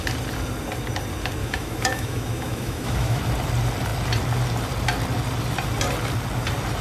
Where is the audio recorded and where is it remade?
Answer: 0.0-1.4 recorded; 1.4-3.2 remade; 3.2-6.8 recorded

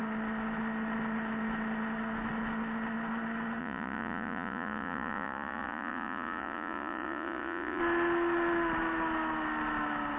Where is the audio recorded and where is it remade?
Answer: 0.0-3.6 recorded; 3.6-7.8 remade; 7.8-10.2 recorded

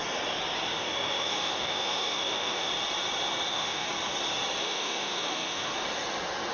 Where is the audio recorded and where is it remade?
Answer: 0.0-0.7 recorded; 0.7-2.7 remade; 2.7-3.5 recorded; 3.5-3.9 remade; 3.9-4.6 recorded; 4.6-5.7 remade; 5.7-6.5 recorded

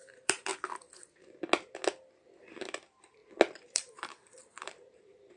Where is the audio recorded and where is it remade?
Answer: 0.0-0.5 remade; 0.5-2.4 recorded; 2.4-3.2 remade; 3.2-3.7 recorded; 3.7-5.4 remade

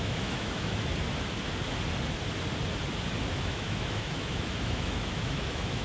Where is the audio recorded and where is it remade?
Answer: 0.0-0.9 remade; 0.9-3.3 recorded; 3.3-5.8 remade

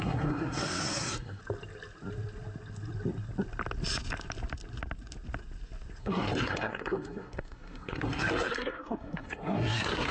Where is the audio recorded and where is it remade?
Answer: 0.0-1.4 remade; 1.4-6.0 recorded; 6.0-10.1 remade

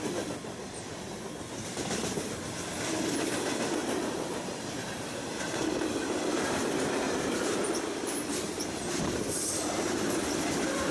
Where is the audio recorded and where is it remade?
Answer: 0.0-3.8 recorded; 3.8-8.8 remade; 8.8-10.9 recorded